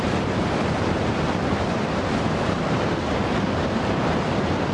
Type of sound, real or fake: fake